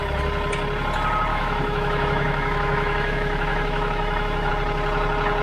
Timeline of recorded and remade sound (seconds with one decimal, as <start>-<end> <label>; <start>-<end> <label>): 0.0-1.3 recorded; 1.3-4.5 remade; 4.5-5.4 recorded